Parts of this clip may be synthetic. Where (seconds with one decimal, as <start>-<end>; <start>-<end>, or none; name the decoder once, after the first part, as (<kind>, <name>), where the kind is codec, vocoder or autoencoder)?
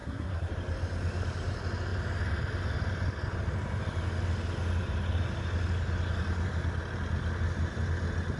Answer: 0.0-0.5 (codec, SNAC)